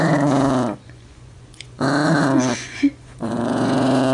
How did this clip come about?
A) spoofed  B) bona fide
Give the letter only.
A